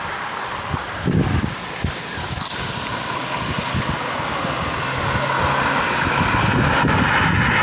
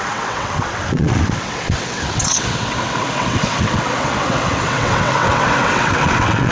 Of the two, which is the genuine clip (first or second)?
first